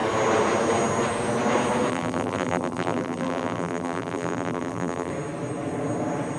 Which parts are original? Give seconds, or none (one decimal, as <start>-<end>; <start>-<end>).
0.0-1.9; 5.1-6.4